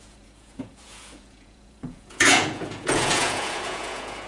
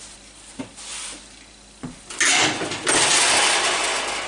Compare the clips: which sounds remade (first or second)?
first